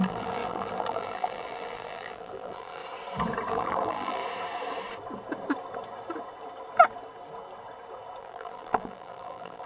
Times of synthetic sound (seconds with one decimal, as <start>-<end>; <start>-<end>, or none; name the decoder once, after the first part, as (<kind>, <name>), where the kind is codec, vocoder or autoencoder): 0.0-2.8 (vocoder, BigVGAN v2); 3.5-4.2; 8.2-9.7